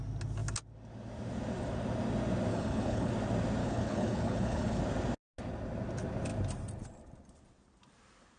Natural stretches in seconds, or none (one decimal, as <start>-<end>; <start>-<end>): 0.0-2.5; 3.1-3.6; 4.8-8.4